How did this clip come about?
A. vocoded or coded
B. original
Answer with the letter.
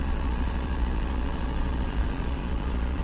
A